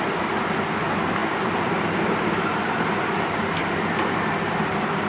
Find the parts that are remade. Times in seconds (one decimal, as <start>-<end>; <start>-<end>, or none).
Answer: none